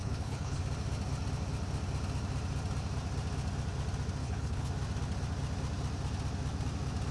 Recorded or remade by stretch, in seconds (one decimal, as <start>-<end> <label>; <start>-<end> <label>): 0.0-0.6 remade; 0.6-4.2 recorded; 4.2-4.7 remade; 4.7-7.1 recorded